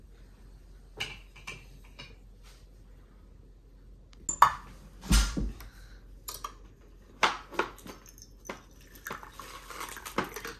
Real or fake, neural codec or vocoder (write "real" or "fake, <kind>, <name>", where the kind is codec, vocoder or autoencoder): real